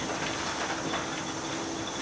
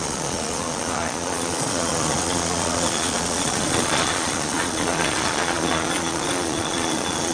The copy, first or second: second